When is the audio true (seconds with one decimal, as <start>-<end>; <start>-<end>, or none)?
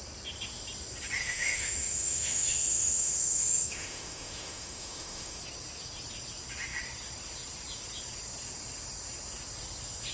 0.0-1.2; 5.4-10.1